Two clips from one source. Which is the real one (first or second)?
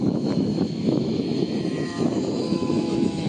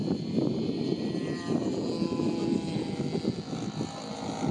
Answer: second